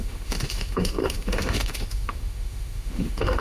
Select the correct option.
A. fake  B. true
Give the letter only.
A